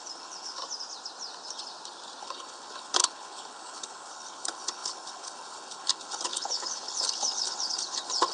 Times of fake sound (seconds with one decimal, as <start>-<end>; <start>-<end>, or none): 0.0-0.6; 2.2-8.3